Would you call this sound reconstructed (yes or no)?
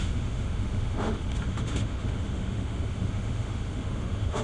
yes